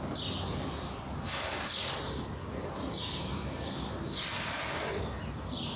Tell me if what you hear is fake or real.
real